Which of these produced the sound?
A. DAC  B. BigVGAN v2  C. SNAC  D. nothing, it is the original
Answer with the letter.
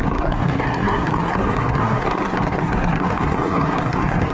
C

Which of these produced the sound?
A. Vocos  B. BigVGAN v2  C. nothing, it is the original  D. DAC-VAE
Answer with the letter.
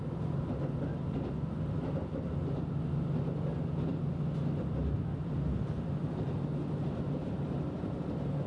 C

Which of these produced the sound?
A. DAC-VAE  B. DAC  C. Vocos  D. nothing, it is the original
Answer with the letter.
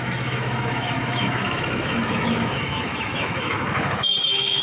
A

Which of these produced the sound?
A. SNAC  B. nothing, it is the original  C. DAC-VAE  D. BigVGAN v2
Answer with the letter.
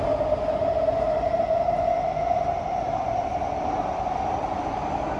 B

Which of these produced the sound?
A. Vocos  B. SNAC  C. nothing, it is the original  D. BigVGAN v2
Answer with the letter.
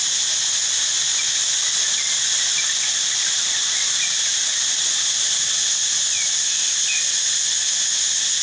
C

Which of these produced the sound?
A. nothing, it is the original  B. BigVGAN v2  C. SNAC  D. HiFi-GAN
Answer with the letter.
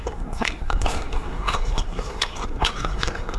C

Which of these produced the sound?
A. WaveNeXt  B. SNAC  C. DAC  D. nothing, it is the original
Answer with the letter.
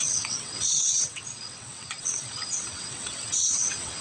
A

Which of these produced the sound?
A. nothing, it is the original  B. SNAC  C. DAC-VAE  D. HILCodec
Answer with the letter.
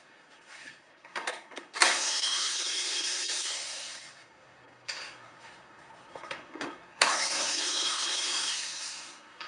B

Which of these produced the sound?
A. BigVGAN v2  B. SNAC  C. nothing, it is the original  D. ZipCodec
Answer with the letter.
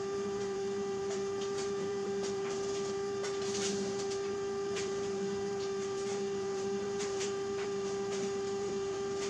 A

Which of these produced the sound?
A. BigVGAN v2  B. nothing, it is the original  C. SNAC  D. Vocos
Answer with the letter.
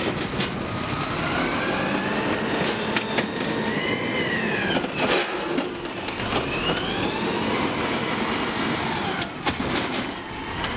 B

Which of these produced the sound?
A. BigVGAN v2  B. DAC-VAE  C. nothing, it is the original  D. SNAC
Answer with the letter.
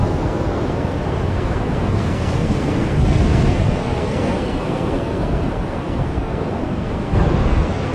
D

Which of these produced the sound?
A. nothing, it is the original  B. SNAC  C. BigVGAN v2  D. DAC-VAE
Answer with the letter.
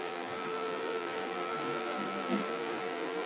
C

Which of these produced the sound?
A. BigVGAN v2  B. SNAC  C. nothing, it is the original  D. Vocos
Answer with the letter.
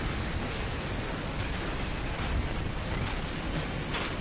C